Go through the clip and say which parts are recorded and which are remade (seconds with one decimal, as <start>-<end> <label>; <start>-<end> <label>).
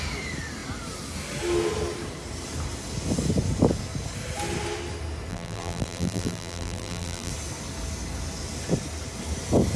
0.0-5.3 recorded; 5.3-7.3 remade; 7.3-9.8 recorded